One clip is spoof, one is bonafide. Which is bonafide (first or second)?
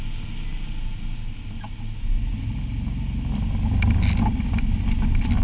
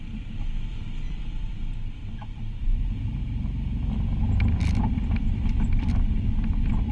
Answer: first